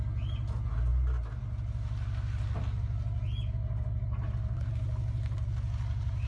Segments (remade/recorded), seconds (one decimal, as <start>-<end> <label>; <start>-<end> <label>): 0.0-6.3 recorded